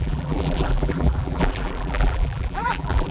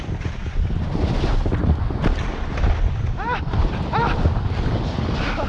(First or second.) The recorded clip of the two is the second